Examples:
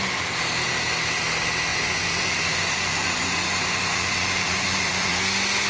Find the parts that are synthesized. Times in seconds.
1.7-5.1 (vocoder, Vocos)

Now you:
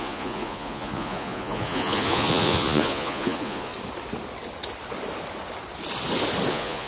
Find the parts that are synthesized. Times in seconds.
0.0-3.7 (vocoder, Vocos); 6.5-6.9

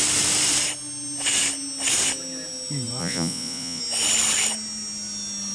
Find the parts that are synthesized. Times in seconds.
3.0-3.8 (vocoder, Vocos)

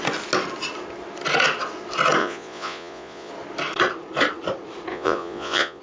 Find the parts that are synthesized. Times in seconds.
2.2-3.3 (vocoder, Vocos); 4.9-5.8

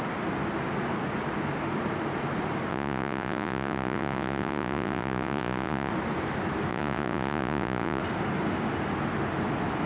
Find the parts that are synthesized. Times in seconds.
2.7-5.9 (vocoder, Vocos); 6.7-8.0

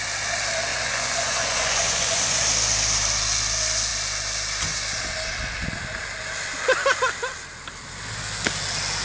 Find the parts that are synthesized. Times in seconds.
0.7-2.4 (vocoder, Vocos)

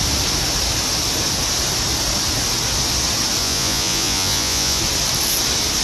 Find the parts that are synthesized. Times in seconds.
3.4-4.8 (vocoder, Vocos)

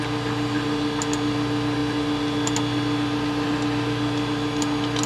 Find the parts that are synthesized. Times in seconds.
none